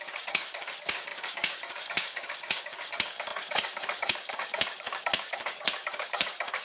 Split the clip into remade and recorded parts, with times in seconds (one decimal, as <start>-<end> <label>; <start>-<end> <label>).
0.0-6.6 remade